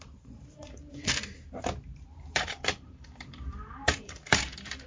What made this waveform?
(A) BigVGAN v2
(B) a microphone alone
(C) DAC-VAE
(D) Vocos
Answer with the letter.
A